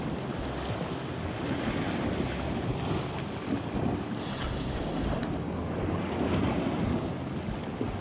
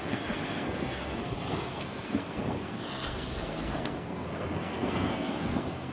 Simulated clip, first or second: second